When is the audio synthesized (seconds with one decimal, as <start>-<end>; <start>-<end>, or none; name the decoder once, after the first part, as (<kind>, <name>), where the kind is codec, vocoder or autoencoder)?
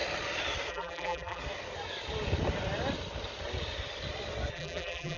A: 0.7-1.4 (vocoder, BigVGAN v2); 4.5-5.2